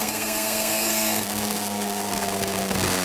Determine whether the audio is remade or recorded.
remade